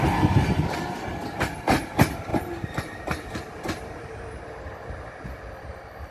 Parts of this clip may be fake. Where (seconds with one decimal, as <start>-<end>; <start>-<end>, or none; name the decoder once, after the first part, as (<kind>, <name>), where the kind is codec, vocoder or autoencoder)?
none